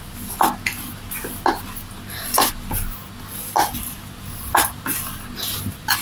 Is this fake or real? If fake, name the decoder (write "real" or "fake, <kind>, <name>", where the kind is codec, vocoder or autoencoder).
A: real